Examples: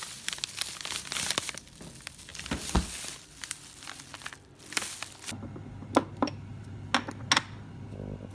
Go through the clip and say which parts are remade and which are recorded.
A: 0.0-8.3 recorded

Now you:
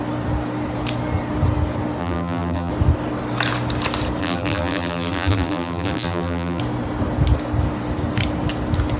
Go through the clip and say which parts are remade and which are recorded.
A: 0.0-2.0 recorded; 2.0-2.7 remade; 2.7-4.2 recorded; 4.2-6.6 remade; 6.6-9.0 recorded

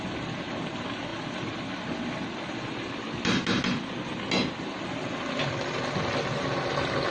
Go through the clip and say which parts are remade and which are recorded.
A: 0.0-7.1 recorded

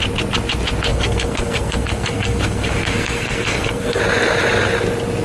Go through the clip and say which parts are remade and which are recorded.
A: 0.0-0.9 recorded; 0.9-4.0 remade; 4.0-5.2 recorded